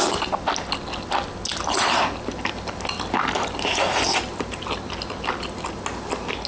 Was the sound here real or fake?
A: real